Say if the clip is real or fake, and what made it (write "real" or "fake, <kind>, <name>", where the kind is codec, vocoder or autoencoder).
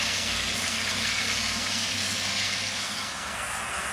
fake, codec, SNAC